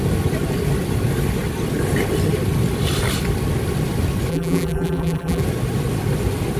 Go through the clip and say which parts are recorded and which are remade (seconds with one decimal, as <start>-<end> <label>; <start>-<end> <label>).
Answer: 0.0-4.3 recorded; 4.3-5.4 remade; 5.4-6.6 recorded